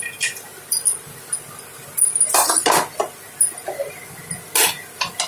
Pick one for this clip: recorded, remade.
recorded